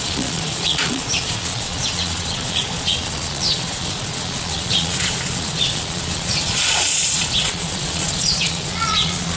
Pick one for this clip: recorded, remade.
remade